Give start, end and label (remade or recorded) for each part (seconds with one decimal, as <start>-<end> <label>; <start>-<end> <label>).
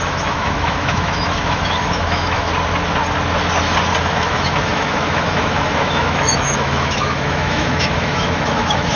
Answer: 0.0-2.5 remade; 2.5-4.0 recorded; 4.0-9.0 remade